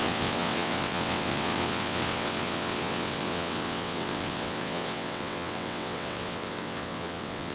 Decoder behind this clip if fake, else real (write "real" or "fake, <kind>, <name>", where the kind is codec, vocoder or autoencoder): fake, vocoder, WaveNeXt